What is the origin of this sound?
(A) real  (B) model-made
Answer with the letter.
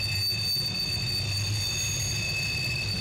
A